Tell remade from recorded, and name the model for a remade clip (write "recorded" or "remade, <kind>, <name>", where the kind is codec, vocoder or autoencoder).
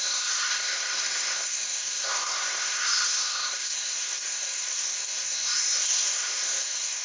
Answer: remade, codec, SNAC